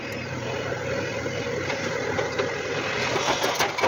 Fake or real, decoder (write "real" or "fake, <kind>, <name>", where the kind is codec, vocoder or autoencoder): real